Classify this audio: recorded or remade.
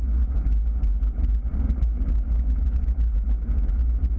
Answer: recorded